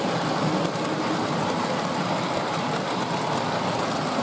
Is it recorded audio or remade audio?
recorded